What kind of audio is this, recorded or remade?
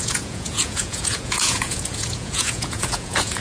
remade